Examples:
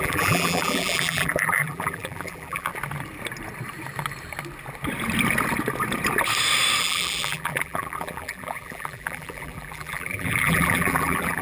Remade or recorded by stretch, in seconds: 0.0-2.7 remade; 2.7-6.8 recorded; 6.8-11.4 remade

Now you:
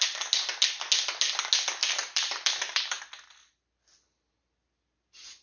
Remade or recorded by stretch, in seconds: 0.0-1.8 recorded; 1.8-3.0 remade; 3.0-5.4 recorded

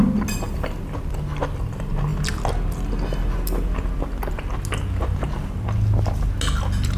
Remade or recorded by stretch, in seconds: 0.0-7.0 recorded

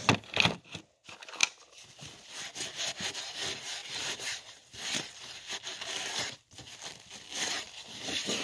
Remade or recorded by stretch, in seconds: 0.0-1.4 recorded; 1.4-2.0 remade; 2.0-8.4 recorded

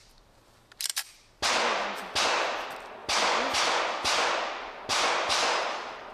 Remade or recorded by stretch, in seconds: 0.0-6.1 recorded